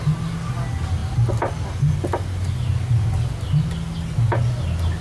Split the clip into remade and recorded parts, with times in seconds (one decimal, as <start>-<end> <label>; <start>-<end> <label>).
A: 0.0-5.0 recorded